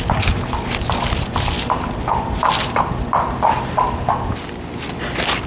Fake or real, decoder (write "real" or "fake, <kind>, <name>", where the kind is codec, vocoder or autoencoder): real